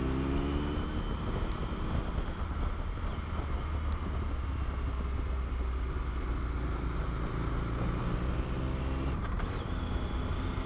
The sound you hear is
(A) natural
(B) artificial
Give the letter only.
A